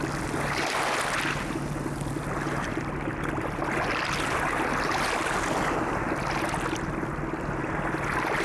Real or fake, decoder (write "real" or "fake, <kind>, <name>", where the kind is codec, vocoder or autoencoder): real